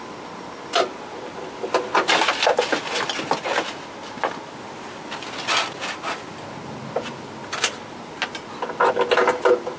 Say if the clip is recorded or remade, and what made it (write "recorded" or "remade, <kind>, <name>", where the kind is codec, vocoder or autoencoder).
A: recorded